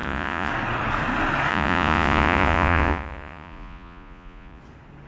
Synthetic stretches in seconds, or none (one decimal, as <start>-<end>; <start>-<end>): 0.0-0.5; 1.5-4.6